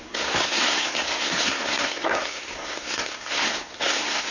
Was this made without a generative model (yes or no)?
no